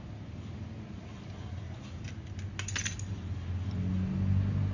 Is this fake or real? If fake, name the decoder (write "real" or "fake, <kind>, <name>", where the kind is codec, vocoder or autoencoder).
real